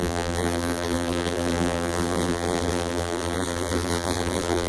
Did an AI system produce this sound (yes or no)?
yes